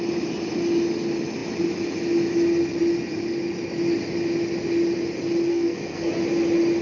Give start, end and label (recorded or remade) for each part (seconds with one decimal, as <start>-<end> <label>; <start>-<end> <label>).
0.0-5.5 recorded; 5.5-6.1 remade; 6.1-6.8 recorded